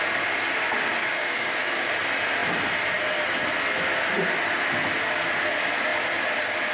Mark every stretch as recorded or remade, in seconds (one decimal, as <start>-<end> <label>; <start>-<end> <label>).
0.0-1.0 recorded; 1.0-1.9 remade; 1.9-6.7 recorded